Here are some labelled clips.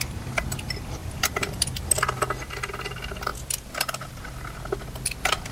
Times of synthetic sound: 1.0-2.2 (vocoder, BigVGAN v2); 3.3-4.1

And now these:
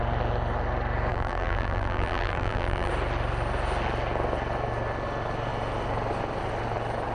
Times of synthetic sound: 1.1-2.9 (vocoder, BigVGAN v2)